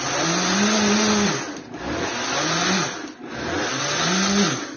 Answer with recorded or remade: recorded